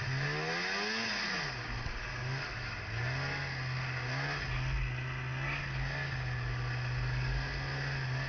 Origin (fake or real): real